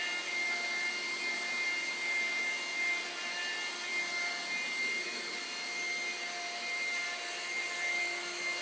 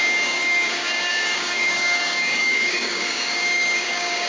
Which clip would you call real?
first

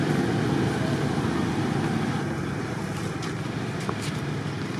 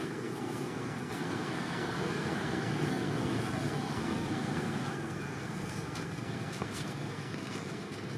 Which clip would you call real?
first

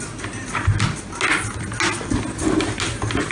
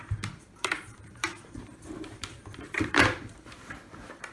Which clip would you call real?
first